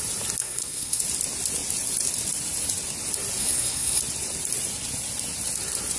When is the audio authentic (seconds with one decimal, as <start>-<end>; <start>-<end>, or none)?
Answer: 0.0-0.4; 1.0-3.4; 4.0-6.0